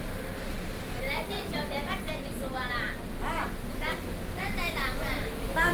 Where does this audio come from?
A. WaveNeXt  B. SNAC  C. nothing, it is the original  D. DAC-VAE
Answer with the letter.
C